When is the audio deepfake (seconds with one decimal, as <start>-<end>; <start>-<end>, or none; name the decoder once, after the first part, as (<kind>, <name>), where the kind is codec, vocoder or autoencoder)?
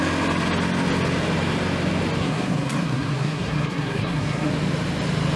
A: 2.2-4.5 (codec, SNAC)